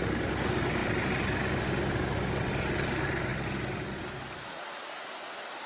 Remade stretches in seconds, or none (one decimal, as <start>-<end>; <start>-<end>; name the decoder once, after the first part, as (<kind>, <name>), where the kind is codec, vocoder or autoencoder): 0.8-2.5 (vocoder, BigVGAN v2); 3.3-4.0

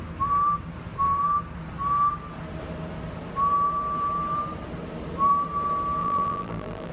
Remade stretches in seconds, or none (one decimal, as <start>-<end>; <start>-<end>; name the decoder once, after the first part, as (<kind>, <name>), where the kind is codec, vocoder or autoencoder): 6.0-6.9 (vocoder, BigVGAN v2)

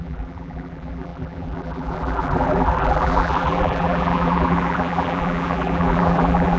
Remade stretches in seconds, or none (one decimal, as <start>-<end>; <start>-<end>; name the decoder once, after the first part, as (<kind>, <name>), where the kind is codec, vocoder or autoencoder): 0.0-6.6 (vocoder, BigVGAN v2)

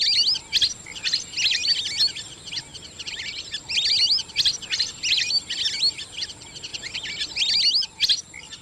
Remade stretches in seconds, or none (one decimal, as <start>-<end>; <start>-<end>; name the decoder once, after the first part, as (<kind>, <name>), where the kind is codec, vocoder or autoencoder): none

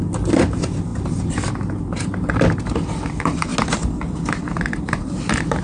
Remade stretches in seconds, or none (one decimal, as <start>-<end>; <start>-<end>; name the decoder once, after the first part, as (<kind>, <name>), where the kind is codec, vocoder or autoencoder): 0.0-3.5 (vocoder, BigVGAN v2); 4.8-5.6

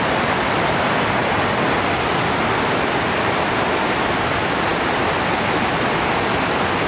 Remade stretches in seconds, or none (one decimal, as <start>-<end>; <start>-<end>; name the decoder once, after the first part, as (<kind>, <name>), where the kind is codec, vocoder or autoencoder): none

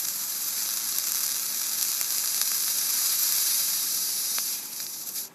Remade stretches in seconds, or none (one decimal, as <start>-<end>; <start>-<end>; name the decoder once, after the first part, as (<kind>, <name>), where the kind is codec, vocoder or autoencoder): 0.0-0.6 (vocoder, BigVGAN v2); 2.7-5.3